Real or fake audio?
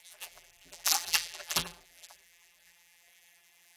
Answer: fake